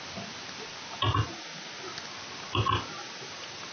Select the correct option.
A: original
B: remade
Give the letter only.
A